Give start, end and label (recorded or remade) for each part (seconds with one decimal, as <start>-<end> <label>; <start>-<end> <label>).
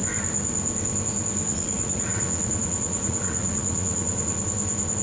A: 0.0-1.5 recorded; 1.5-4.4 remade; 4.4-5.0 recorded